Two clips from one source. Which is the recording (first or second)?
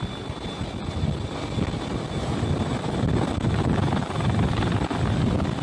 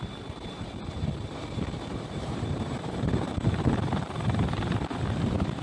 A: first